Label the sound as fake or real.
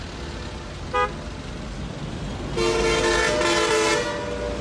real